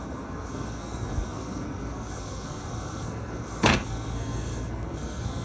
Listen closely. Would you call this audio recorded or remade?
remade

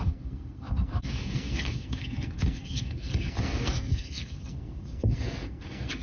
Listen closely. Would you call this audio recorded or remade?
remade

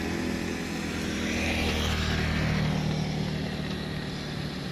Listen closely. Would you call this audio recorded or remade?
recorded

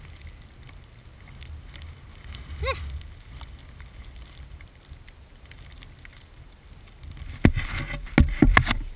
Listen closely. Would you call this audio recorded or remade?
recorded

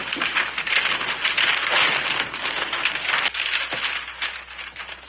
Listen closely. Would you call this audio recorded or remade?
recorded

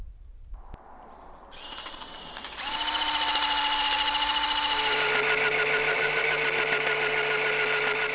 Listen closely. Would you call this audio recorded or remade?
recorded